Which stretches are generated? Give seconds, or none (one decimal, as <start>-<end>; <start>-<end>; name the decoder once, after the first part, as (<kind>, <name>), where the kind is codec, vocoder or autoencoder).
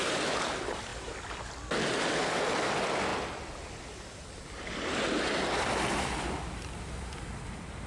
none